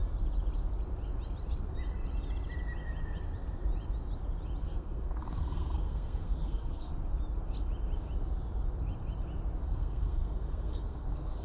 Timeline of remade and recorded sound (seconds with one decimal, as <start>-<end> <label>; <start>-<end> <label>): 0.0-4.6 recorded; 4.6-6.9 remade; 6.9-9.6 recorded; 9.6-11.4 remade